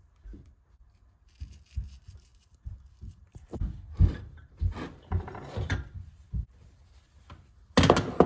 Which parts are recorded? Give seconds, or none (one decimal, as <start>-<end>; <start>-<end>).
0.0-2.3; 6.8-8.3